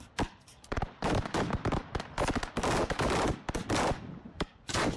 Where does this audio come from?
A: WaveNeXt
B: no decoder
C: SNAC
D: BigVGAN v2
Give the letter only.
B